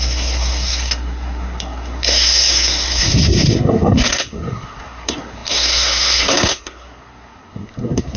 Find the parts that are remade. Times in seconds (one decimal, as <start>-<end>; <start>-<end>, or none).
0.0-8.2